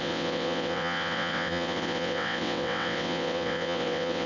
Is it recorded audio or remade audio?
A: remade